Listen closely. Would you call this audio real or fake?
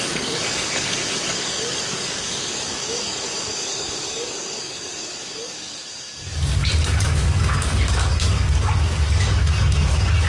fake